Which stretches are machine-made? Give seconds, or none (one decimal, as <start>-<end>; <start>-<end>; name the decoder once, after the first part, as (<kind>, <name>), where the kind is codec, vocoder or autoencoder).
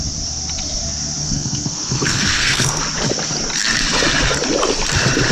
1.2-2.8 (codec, SNAC)